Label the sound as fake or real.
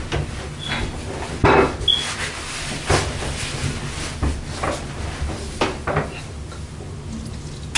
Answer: real